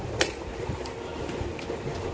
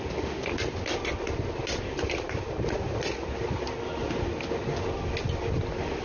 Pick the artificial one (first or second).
first